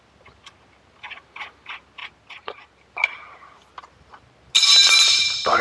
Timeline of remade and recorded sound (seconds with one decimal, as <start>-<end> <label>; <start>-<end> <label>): 0.0-5.6 recorded